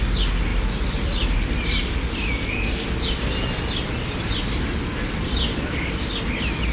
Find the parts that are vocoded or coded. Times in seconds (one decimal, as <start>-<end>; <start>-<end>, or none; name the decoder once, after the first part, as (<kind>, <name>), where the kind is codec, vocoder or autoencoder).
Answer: none